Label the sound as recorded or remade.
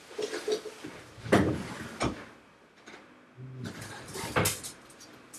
recorded